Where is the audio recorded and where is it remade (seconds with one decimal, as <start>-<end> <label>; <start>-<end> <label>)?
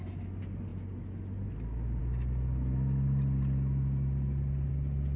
0.0-5.2 recorded